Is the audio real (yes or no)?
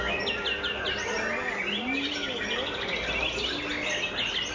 yes